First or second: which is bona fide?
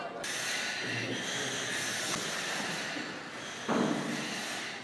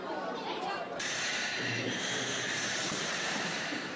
first